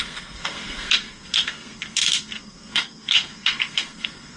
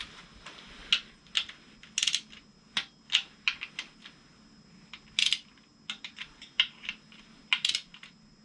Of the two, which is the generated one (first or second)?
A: first